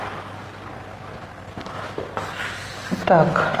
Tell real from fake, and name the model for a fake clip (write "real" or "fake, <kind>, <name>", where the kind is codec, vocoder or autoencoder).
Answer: real